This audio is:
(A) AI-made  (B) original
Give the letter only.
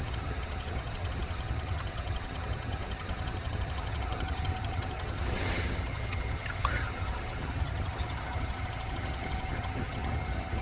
A